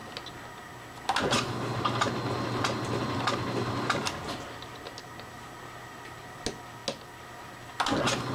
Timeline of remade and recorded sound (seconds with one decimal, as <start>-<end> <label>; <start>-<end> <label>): 0.0-8.3 recorded